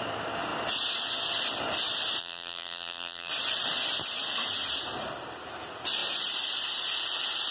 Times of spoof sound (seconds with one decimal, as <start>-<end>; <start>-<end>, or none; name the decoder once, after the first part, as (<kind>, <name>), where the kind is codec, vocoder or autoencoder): 2.2-3.3 (vocoder, BigVGAN v2)